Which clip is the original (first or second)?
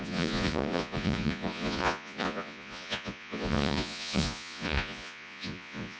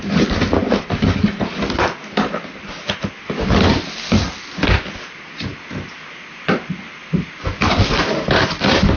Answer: second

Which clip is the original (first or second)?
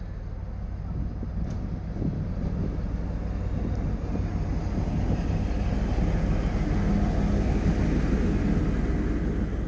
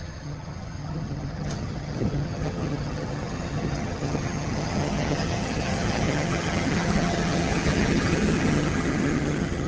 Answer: first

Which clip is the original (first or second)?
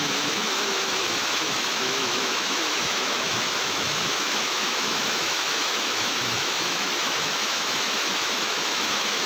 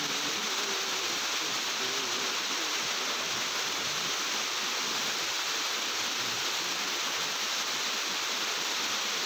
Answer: second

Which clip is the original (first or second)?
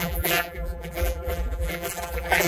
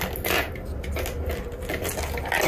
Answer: second